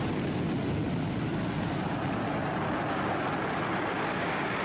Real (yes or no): yes